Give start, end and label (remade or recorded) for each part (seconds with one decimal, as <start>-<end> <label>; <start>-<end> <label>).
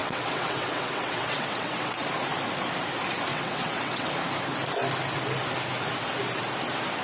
0.0-2.1 remade; 2.1-3.3 recorded; 3.3-4.1 remade; 4.1-7.0 recorded